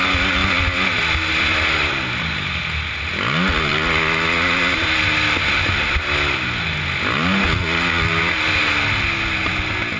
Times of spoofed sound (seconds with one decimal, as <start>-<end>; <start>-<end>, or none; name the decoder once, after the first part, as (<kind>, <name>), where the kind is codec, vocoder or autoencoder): none